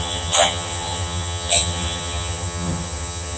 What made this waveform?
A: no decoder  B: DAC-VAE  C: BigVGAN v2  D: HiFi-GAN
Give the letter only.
D